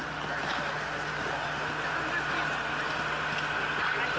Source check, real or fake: real